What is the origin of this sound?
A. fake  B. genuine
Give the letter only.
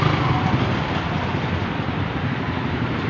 A